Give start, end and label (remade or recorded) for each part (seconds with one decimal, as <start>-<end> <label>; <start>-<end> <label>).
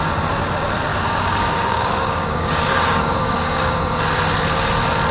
0.0-0.9 recorded; 0.9-4.0 remade; 4.0-5.1 recorded